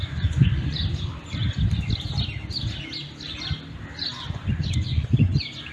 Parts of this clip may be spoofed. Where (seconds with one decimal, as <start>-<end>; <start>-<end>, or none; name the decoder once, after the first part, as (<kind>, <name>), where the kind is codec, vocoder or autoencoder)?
0.0-0.8 (vocoder, Vocos); 4.2-5.7